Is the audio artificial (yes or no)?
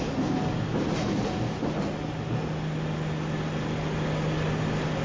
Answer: no